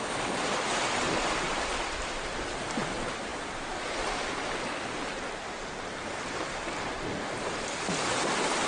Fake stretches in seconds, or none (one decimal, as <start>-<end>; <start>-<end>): none